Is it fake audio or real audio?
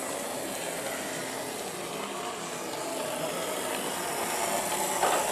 real